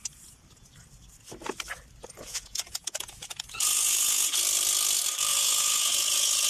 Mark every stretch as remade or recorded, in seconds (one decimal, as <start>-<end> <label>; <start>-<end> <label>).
0.0-2.2 recorded; 2.2-4.4 remade; 4.4-5.3 recorded; 5.3-6.5 remade

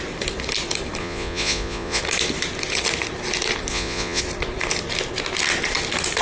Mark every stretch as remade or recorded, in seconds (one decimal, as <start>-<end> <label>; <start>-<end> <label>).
0.0-1.0 recorded; 1.0-2.0 remade; 2.0-3.7 recorded; 3.7-4.2 remade; 4.2-6.2 recorded

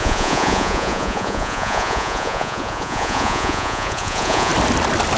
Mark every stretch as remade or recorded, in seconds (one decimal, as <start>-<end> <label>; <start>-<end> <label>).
0.0-4.5 remade; 4.5-5.2 recorded

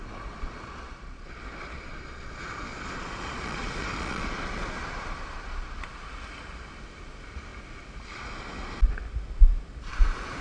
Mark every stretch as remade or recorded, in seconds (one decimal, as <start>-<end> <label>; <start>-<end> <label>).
0.0-2.3 remade; 2.3-2.7 recorded; 2.7-5.8 remade; 5.8-10.4 recorded

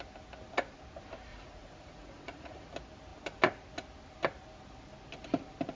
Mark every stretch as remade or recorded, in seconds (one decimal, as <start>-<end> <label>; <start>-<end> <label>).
0.0-1.3 recorded; 1.3-2.7 remade; 2.7-5.8 recorded

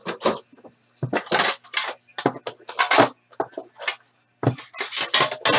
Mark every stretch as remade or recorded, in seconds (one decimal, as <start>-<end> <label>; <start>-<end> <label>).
0.0-5.6 recorded

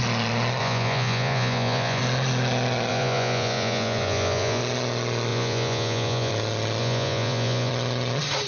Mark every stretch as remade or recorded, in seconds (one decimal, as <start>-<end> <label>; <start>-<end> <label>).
0.0-0.6 recorded; 0.6-2.0 remade; 2.0-2.9 recorded; 2.9-4.6 remade; 4.6-5.3 recorded; 5.3-6.3 remade; 6.3-6.8 recorded; 6.8-7.7 remade; 7.7-8.5 recorded

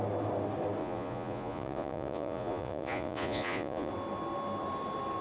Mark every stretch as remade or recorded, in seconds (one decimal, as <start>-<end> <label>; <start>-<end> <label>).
0.0-0.8 recorded; 0.8-3.9 remade; 3.9-5.2 recorded